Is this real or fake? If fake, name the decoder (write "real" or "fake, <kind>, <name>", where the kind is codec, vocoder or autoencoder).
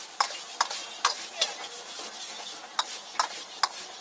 real